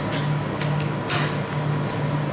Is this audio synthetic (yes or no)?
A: no